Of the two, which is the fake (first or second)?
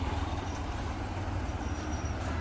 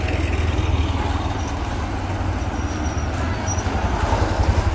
first